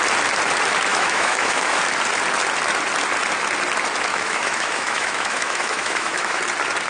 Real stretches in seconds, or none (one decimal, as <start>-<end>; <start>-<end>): 0.0-0.9; 1.8-4.1; 6.4-6.9